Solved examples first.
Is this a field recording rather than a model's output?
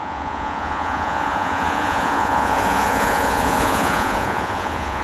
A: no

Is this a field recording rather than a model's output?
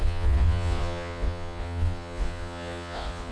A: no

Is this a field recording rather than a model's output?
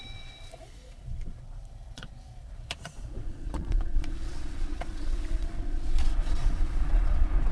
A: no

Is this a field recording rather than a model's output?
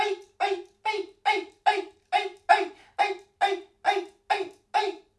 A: yes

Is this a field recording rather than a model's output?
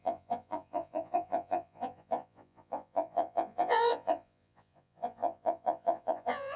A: no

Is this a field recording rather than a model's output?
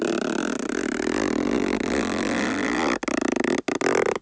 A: yes